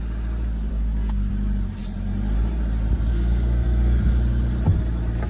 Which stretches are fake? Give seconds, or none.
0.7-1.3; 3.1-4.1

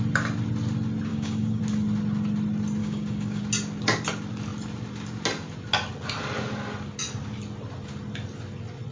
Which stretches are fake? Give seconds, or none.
1.1-1.6; 2.8-3.4